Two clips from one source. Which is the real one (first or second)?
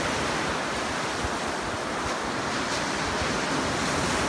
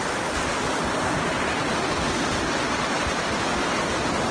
first